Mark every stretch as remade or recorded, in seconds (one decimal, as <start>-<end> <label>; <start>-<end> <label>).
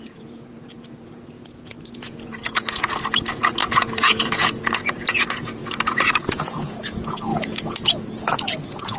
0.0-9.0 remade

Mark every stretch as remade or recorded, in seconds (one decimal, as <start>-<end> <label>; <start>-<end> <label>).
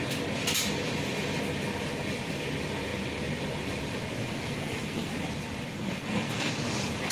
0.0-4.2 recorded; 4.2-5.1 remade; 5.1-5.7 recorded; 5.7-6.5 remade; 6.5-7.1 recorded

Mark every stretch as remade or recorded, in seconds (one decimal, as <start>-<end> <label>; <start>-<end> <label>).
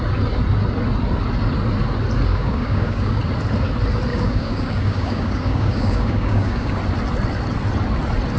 0.0-2.3 recorded; 2.3-3.2 remade; 3.2-4.1 recorded; 4.1-6.8 remade; 6.8-8.4 recorded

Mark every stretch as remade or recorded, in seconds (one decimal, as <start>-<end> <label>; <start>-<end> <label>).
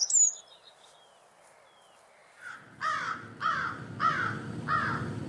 0.0-5.3 recorded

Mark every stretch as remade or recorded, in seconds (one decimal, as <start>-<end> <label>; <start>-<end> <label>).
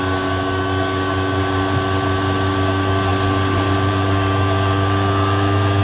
0.0-1.4 remade; 1.4-2.7 recorded; 2.7-3.1 remade; 3.1-3.9 recorded; 3.9-5.8 remade